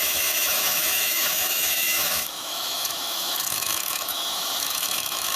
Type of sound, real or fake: fake